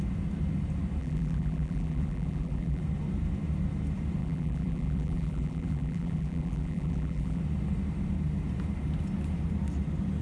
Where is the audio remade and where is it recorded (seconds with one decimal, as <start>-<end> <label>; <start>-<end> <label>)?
0.0-1.0 recorded; 1.0-2.8 remade; 2.8-4.2 recorded; 4.2-7.4 remade; 7.4-10.2 recorded